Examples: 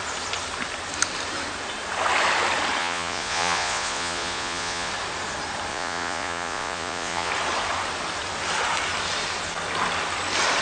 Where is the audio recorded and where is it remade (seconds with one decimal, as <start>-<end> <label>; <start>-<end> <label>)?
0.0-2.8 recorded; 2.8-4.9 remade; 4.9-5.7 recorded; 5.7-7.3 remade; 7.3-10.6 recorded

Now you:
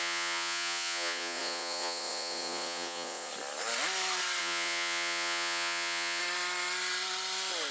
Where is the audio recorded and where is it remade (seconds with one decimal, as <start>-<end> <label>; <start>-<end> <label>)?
0.0-3.3 remade; 3.3-4.4 recorded; 4.4-6.2 remade; 6.2-7.7 recorded

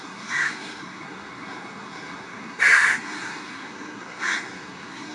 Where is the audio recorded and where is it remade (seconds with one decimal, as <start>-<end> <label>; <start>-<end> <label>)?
0.0-5.1 remade

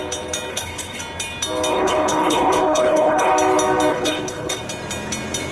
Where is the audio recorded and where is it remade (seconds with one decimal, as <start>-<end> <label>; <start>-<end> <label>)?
0.0-0.5 recorded; 0.5-1.0 remade; 1.0-1.7 recorded; 1.7-3.3 remade; 3.3-3.9 recorded; 3.9-4.6 remade; 4.6-5.5 recorded

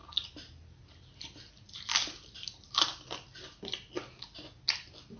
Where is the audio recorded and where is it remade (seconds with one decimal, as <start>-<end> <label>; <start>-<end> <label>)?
0.0-5.2 recorded